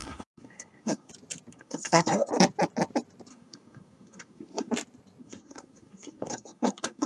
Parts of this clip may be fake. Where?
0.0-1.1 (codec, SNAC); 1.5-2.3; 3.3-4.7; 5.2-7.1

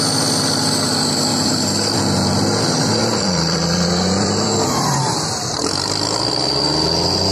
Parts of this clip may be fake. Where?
1.3-2.0 (vocoder, BigVGAN v2); 3.0-6.2

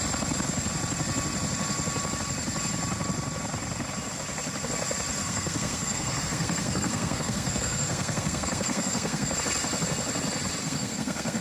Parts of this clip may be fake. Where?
5.2-9.4 (codec, SNAC); 10.6-11.4

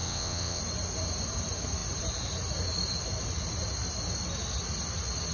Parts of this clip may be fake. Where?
0.0-0.6 (vocoder, WaveNeXt)

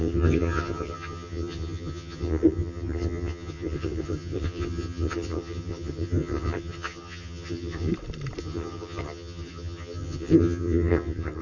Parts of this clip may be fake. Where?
0.0-7.9 (vocoder, HiFi-GAN); 8.4-11.4

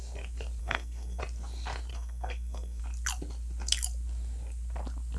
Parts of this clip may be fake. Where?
0.6-1.2 (codec, SNAC); 1.9-2.8

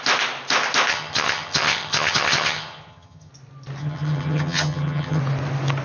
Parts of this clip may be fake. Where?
0.9-3.3 (vocoder, HiFi-GAN); 3.8-5.2